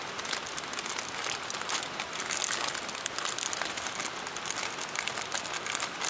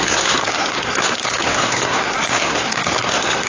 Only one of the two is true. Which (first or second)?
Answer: first